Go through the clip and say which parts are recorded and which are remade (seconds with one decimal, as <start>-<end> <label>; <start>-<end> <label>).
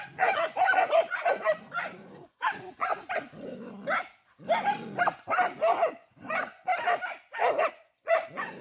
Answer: 0.0-2.9 remade; 2.9-5.9 recorded; 5.9-6.7 remade; 6.7-7.7 recorded; 7.7-8.6 remade